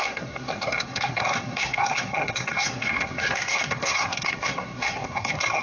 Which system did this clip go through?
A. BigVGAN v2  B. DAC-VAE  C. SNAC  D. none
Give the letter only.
C